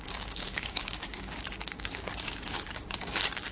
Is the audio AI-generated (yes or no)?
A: yes